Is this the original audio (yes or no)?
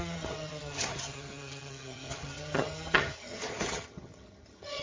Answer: no